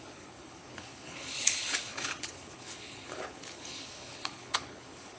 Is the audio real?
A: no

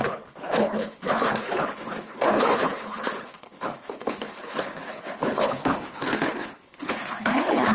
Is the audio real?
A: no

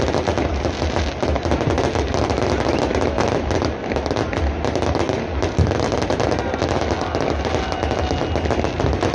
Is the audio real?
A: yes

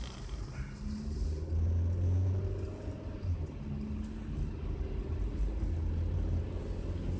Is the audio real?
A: yes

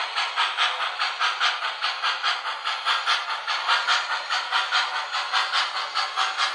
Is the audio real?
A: yes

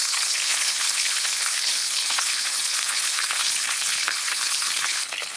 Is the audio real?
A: no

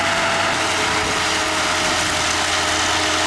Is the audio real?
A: yes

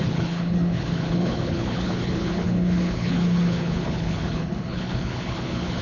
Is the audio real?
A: no